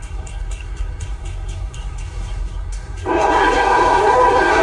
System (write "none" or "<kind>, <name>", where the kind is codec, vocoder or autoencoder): codec, SNAC